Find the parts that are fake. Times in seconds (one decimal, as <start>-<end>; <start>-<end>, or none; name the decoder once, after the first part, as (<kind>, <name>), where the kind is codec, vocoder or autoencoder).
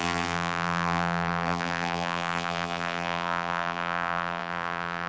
0.0-5.1 (vocoder, BigVGAN v2)